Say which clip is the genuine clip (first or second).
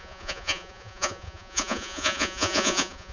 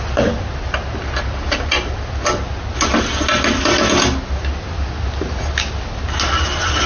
second